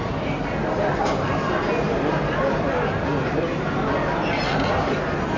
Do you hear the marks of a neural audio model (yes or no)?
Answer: no